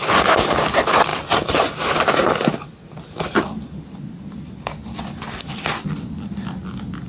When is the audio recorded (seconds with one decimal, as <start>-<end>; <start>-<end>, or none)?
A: 0.0-7.1